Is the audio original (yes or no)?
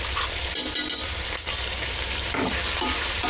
no